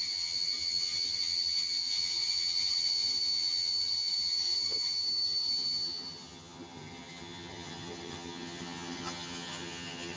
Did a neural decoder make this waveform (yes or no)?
yes